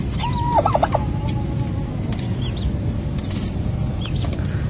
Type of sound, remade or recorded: recorded